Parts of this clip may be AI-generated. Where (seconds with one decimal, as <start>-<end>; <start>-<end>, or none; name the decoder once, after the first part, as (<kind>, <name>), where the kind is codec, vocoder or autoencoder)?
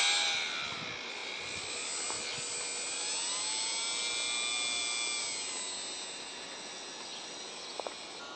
none